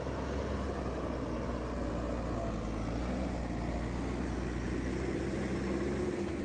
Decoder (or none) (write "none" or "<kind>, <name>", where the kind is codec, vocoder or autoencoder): none